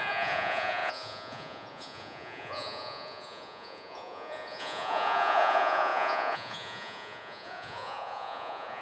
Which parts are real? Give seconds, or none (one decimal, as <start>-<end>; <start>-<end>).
none